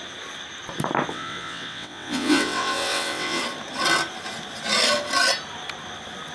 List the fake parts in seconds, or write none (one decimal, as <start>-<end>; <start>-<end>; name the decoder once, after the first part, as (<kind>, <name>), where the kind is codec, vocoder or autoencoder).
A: 1.1-3.4 (vocoder, WaveNeXt)